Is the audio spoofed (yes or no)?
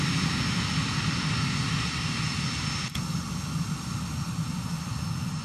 no